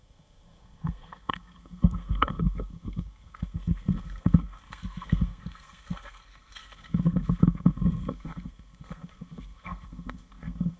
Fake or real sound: fake